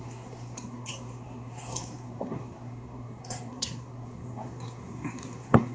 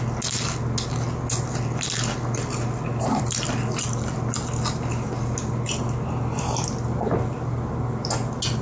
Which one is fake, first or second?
first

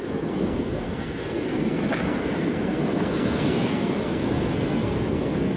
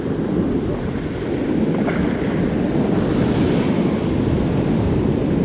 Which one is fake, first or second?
first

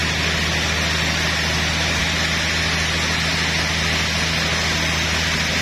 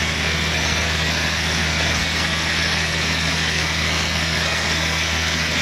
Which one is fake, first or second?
second